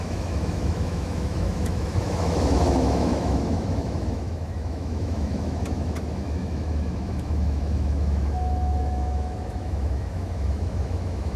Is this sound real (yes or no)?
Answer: no